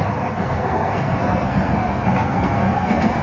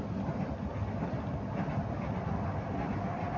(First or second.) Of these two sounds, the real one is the second